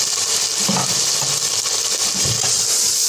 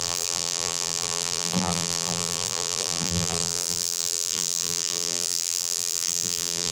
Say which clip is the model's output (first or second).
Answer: second